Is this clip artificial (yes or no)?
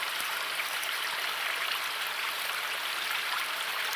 no